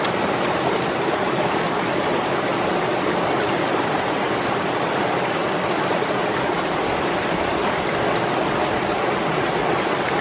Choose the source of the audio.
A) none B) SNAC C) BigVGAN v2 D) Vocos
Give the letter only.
A